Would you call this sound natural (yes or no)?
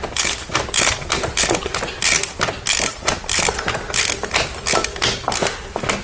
yes